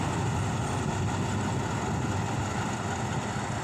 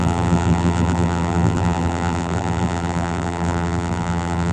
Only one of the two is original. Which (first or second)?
first